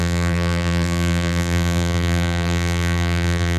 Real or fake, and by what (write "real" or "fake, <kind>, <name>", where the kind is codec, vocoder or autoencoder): fake, vocoder, BigVGAN v2